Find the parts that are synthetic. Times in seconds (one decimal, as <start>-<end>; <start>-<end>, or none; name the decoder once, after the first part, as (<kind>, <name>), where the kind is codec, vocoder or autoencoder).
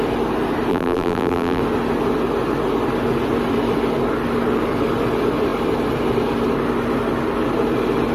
0.7-1.6 (vocoder, BigVGAN v2)